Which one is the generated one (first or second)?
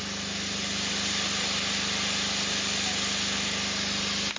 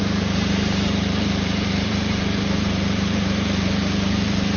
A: second